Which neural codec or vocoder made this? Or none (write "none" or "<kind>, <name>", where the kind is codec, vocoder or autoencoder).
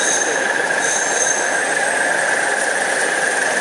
none